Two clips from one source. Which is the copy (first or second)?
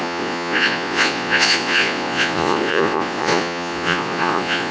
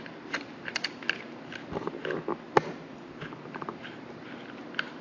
first